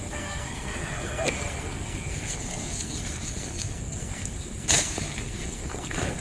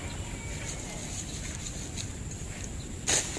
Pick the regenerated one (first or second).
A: first